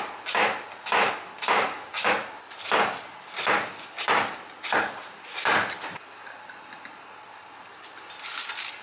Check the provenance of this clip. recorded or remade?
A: recorded